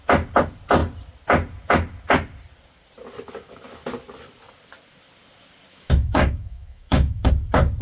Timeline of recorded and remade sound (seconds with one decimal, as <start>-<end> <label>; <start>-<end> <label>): 0.0-5.7 recorded; 5.7-7.3 remade; 7.3-7.8 recorded